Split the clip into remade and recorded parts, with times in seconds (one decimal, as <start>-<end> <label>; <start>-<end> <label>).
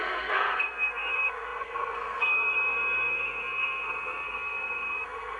0.0-5.4 remade